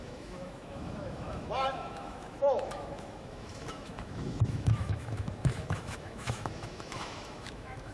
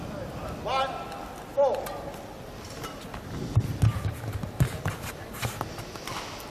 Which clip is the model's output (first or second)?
first